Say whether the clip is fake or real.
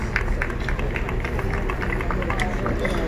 real